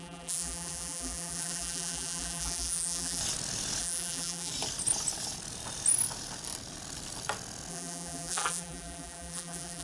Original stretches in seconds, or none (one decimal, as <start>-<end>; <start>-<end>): 3.2-3.8; 4.5-7.7